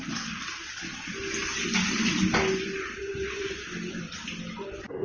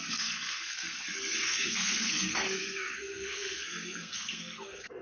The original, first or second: first